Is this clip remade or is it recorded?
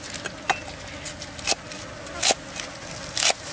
recorded